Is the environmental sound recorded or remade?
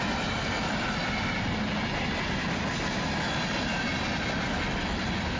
recorded